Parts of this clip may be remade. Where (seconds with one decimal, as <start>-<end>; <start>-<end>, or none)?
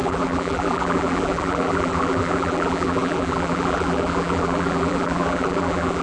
0.0-6.0